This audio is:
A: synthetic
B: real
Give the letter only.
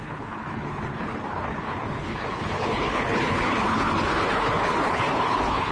A